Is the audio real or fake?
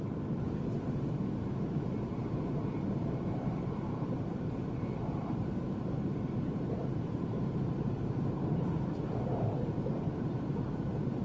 fake